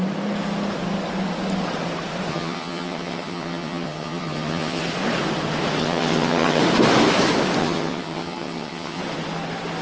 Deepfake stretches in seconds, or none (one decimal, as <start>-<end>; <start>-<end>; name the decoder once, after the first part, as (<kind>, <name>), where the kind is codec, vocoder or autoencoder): 2.3-4.8 (vocoder, HiFi-GAN); 5.8-6.6; 7.6-9.0